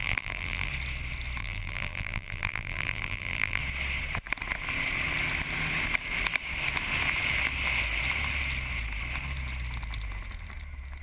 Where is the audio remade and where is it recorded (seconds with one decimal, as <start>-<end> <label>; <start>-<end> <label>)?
0.0-0.7 remade; 0.7-1.4 recorded; 1.4-3.6 remade; 3.6-11.0 recorded